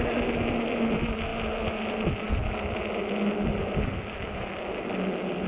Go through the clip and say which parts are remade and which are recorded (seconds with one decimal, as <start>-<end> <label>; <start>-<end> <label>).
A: 0.0-5.5 recorded